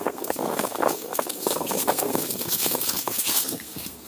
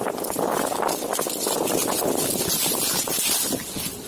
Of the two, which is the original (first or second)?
second